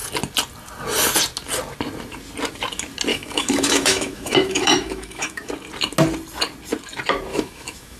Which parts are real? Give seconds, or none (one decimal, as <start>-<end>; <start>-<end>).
0.0-3.1; 5.5-7.3